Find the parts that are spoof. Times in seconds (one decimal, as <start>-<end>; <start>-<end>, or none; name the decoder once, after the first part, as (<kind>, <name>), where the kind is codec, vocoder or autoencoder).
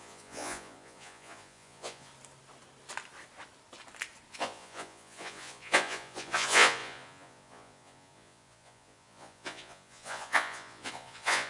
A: 0.0-2.1 (vocoder, Vocos); 4.3-11.5